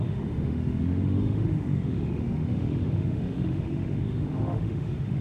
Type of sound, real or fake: fake